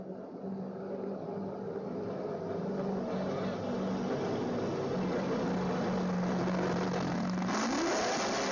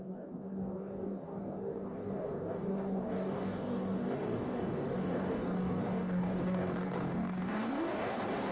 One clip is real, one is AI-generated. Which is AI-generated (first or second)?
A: second